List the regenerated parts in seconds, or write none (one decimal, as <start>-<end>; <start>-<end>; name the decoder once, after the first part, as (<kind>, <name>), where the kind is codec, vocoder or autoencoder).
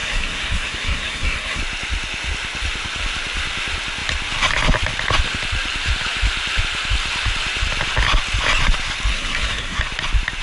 0.0-1.6 (codec, SNAC); 9.1-9.8